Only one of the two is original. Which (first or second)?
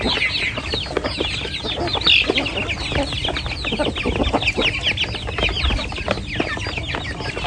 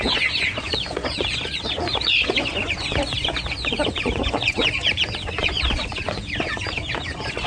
first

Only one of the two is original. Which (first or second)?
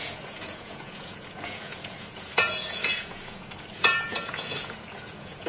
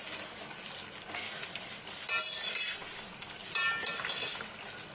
second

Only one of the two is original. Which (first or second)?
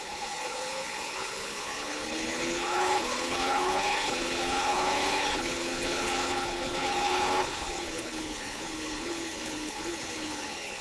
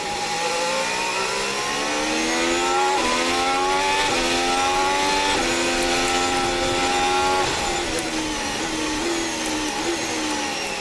second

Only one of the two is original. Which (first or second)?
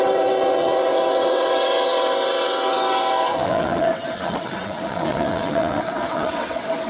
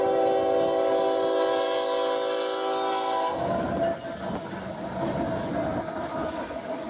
second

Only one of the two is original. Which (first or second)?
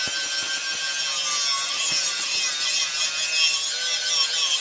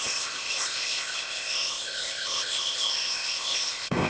first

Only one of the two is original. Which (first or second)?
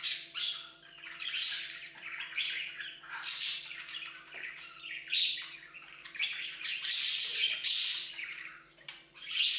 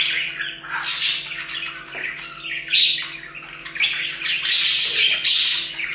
second